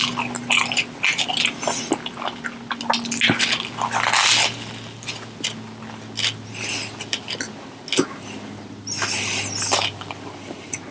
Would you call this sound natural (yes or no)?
yes